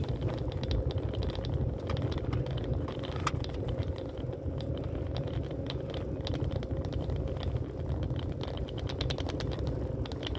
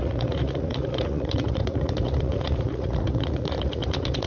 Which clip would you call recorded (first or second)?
first